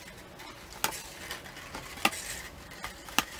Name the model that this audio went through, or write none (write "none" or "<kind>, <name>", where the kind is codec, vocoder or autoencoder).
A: none